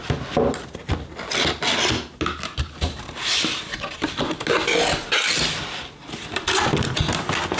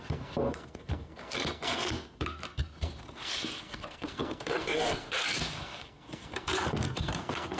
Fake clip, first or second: second